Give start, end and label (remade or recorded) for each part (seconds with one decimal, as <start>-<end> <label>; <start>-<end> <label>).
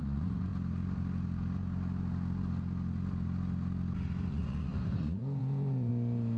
0.0-0.5 remade; 0.5-4.3 recorded; 4.3-5.9 remade; 5.9-6.4 recorded